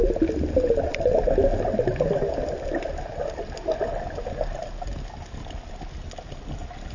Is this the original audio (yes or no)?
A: yes